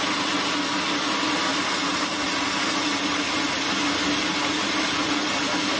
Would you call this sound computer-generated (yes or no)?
no